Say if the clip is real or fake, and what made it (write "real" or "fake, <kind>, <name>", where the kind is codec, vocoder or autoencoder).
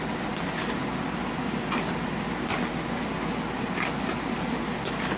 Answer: real